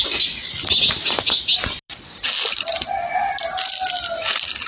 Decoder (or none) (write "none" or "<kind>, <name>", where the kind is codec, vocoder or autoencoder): none